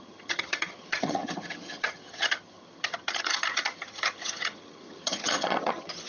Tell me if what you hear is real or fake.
fake